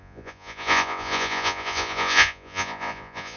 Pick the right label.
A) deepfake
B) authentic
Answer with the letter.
A